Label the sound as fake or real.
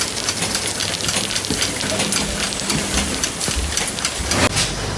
real